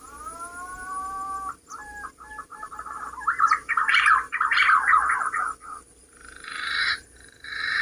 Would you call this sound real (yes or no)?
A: no